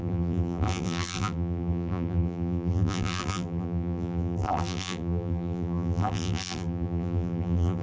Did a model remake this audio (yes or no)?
yes